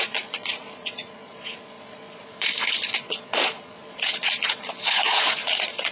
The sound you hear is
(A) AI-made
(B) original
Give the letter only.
A